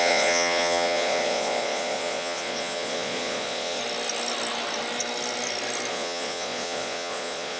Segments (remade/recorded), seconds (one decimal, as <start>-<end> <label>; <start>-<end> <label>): 0.0-3.8 remade; 3.8-5.9 recorded; 5.9-7.6 remade